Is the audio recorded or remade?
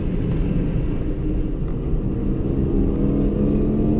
recorded